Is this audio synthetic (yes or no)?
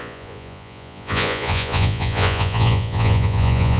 yes